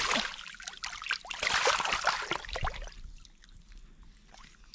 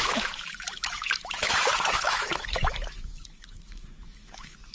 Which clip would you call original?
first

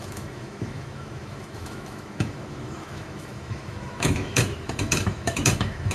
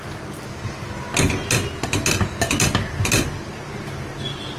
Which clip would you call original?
second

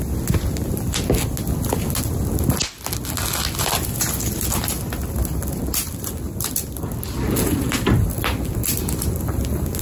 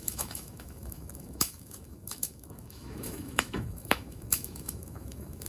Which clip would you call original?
first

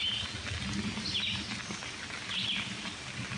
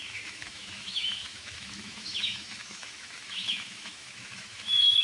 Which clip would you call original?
first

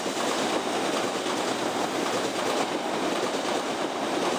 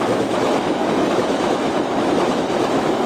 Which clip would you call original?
first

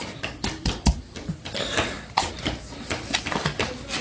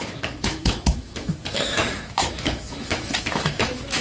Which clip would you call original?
first